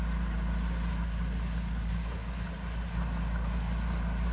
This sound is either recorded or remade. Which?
recorded